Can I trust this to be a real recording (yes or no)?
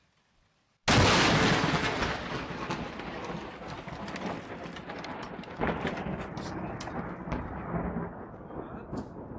yes